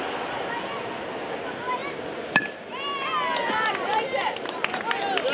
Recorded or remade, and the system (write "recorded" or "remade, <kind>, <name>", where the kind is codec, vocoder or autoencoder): recorded